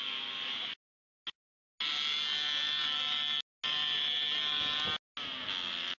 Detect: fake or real real